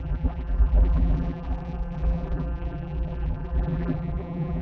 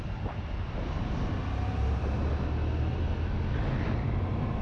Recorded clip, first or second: second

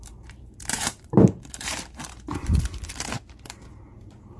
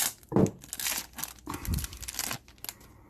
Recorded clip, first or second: second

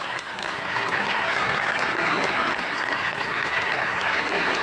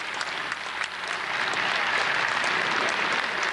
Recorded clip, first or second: second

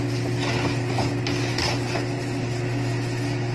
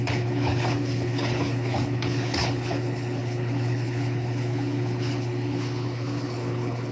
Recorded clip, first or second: first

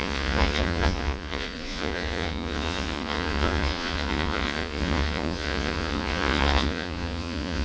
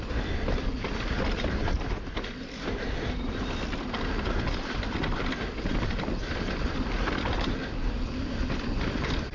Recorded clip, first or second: second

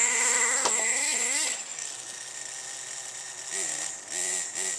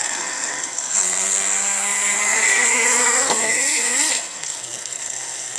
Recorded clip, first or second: first